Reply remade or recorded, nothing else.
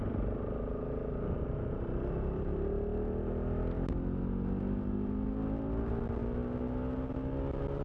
recorded